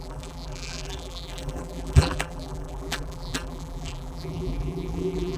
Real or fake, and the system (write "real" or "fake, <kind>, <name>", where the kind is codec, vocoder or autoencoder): fake, vocoder, BigVGAN v2